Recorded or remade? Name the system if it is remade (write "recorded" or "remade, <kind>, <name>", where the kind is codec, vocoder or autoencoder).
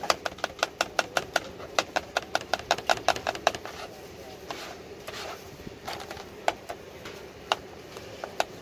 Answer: remade, vocoder, BigVGAN v2